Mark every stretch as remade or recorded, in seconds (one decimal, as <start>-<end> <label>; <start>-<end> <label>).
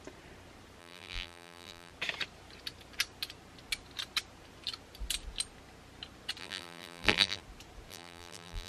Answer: 0.0-0.8 recorded; 0.8-1.9 remade; 1.9-6.4 recorded; 6.4-7.4 remade; 7.4-7.9 recorded; 7.9-8.7 remade